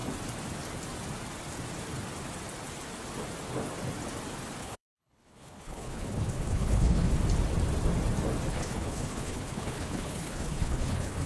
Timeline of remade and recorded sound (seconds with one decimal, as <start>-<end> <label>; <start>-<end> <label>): 0.0-4.6 recorded; 4.6-7.1 remade; 7.1-8.5 recorded; 8.5-11.3 remade